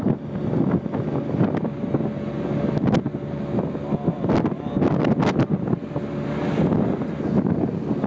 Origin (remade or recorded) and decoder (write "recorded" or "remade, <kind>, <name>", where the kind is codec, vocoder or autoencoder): recorded